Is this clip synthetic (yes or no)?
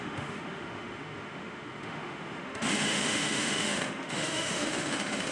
yes